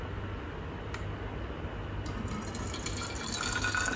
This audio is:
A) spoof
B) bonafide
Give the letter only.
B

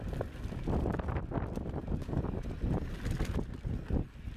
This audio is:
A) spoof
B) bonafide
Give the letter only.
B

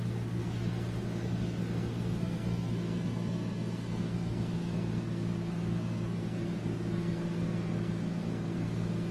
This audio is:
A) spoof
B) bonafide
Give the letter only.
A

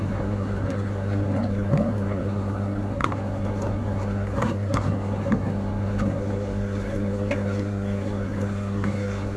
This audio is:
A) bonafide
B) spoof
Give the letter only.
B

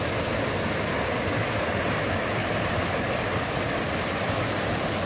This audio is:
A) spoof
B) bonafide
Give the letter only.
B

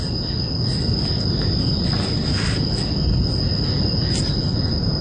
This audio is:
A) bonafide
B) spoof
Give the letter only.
A